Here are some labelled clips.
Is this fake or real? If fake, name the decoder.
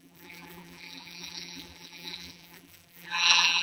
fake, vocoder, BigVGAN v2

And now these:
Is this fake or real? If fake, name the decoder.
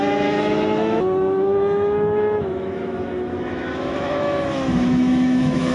fake, autoencoder, DAC-VAE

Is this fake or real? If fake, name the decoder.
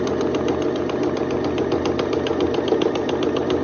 real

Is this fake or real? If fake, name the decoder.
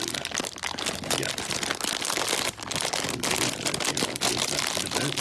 real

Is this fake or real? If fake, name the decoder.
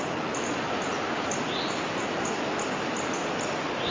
real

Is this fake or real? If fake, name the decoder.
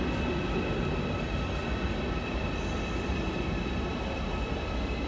real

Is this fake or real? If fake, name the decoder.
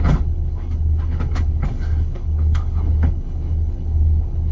fake, codec, HILCodec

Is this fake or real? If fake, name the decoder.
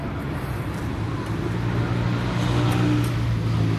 real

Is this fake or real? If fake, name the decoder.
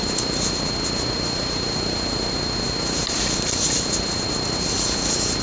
real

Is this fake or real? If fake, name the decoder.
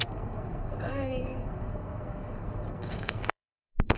fake, codec, SNAC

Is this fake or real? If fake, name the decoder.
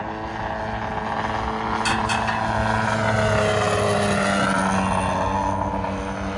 real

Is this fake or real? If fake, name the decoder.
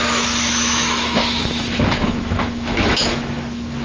fake, autoencoder, DAC-VAE